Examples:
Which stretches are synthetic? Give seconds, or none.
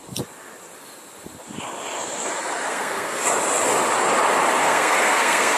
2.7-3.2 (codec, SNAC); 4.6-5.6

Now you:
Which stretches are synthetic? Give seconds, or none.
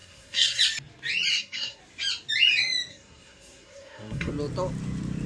0.0-0.6 (codec, SNAC); 1.3-1.8; 2.9-4.3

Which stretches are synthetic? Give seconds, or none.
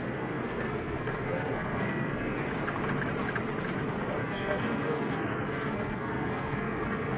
0.0-2.4 (codec, SNAC); 4.2-7.2